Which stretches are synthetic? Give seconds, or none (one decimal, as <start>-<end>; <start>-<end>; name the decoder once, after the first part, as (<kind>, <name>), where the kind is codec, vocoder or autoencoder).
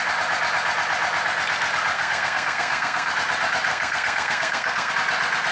1.9-3.1 (codec, SNAC); 3.7-4.9